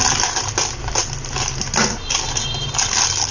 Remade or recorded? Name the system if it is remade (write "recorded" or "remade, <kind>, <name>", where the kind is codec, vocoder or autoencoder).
recorded